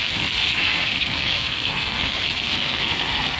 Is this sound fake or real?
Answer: fake